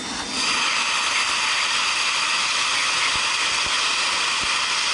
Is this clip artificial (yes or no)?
no